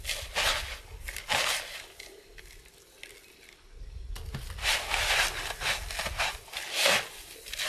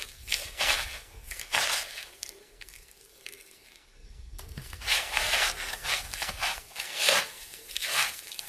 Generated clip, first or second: second